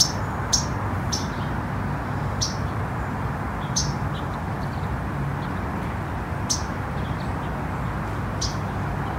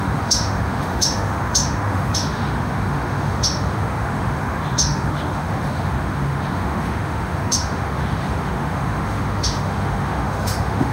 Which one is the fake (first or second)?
second